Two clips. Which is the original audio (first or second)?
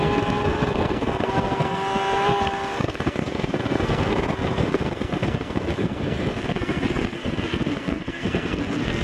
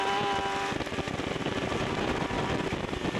second